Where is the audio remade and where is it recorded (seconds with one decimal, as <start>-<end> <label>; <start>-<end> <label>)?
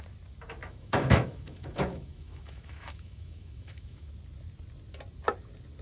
0.0-0.6 recorded; 0.6-4.1 remade; 4.1-5.8 recorded